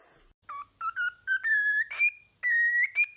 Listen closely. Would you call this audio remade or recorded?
recorded